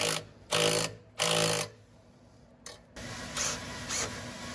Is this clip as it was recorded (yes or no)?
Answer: yes